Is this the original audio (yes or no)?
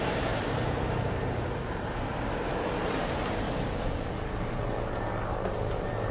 no